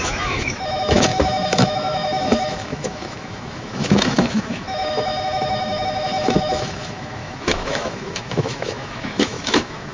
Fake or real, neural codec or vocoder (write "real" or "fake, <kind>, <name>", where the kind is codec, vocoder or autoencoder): fake, autoencoder, DAC-VAE